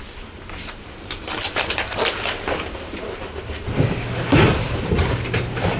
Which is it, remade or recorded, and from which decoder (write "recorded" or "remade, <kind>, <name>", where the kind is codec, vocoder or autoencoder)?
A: remade, vocoder, BigVGAN v2